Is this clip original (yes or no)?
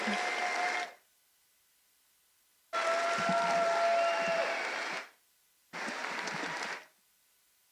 yes